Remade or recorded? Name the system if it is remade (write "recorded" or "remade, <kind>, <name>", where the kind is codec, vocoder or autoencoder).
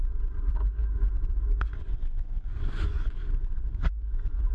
remade, vocoder, Vocos